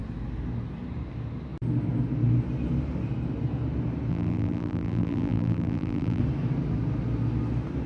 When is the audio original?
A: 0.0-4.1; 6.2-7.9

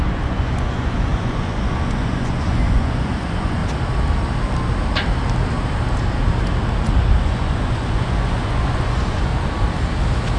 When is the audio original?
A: 3.6-7.2; 9.3-10.4

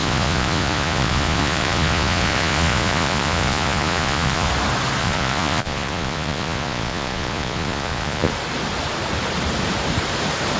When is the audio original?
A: 4.5-5.0; 8.3-10.6